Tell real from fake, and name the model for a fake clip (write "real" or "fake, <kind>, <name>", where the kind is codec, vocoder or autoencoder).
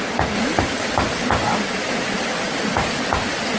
real